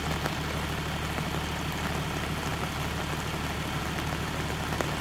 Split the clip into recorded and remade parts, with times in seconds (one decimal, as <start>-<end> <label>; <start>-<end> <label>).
0.0-5.0 recorded